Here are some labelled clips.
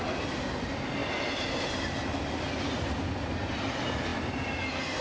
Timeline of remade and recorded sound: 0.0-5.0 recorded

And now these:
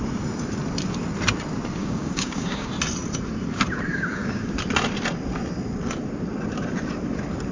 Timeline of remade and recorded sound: 0.0-1.8 recorded; 1.8-2.7 remade; 2.7-3.9 recorded; 3.9-4.5 remade; 4.5-7.5 recorded

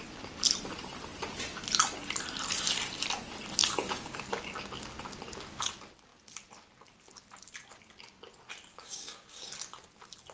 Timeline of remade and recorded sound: 0.0-3.6 recorded; 3.6-4.2 remade; 4.2-8.7 recorded; 8.7-9.5 remade; 9.5-10.3 recorded

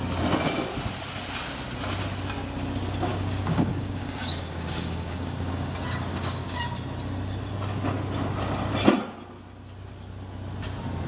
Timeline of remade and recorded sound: 0.0-3.1 recorded; 3.1-6.6 remade; 6.6-11.1 recorded

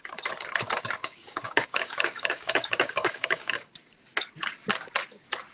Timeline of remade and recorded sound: 0.0-1.0 recorded; 1.0-3.7 remade; 3.7-5.5 recorded

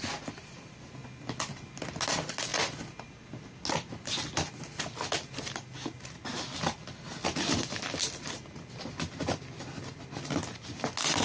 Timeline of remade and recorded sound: 0.0-11.2 recorded

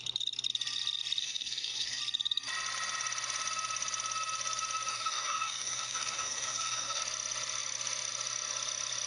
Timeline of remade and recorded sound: 0.0-1.2 recorded; 1.2-2.0 remade; 2.0-4.9 recorded; 4.9-7.0 remade; 7.0-9.1 recorded

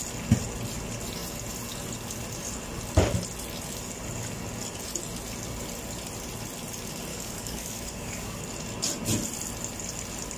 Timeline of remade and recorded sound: 0.0-7.1 recorded; 7.1-8.4 remade; 8.4-10.4 recorded